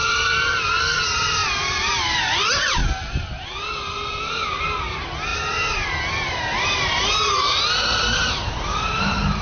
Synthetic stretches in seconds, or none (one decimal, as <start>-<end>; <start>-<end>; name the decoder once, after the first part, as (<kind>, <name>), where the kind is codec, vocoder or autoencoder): 0.0-2.8 (vocoder, BigVGAN v2); 4.3-9.4